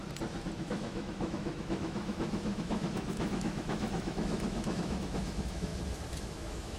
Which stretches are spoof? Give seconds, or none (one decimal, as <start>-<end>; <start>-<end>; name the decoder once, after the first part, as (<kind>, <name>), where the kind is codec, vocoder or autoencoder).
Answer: 0.6-5.7 (autoencoder, DAC-VAE); 6.2-6.8